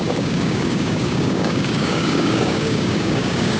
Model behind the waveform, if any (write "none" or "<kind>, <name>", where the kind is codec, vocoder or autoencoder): codec, DAC